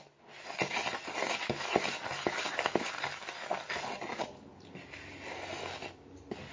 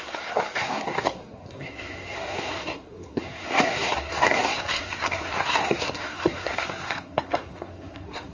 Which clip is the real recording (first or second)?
first